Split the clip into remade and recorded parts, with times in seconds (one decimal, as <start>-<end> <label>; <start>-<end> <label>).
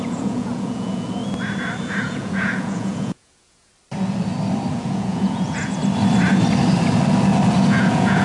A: 0.0-1.2 remade; 1.2-2.0 recorded; 2.0-3.7 remade; 3.7-4.7 recorded; 4.7-5.8 remade; 5.8-7.6 recorded; 7.6-8.2 remade